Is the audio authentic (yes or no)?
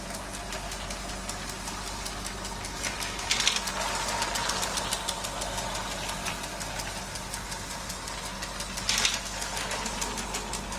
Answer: yes